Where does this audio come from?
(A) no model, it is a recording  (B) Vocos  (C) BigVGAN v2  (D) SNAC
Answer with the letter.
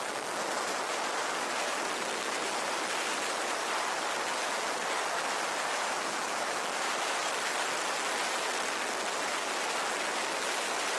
A